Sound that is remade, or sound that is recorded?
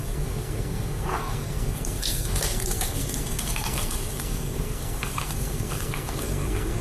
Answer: remade